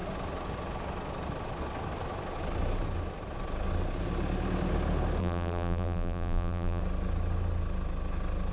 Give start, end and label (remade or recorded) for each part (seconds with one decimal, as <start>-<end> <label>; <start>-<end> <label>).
0.0-5.2 recorded; 5.2-6.8 remade; 6.8-8.5 recorded